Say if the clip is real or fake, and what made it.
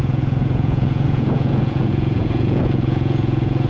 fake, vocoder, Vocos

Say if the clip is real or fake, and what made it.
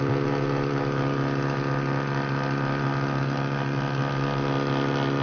real